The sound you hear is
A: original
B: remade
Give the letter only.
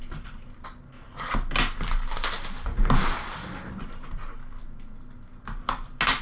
A